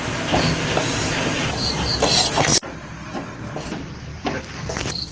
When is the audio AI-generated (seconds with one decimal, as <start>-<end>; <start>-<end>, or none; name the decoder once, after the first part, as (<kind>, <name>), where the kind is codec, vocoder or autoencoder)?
2.5-3.5 (vocoder, BigVGAN v2); 4.1-5.1